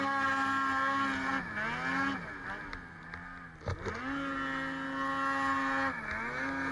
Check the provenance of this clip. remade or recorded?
recorded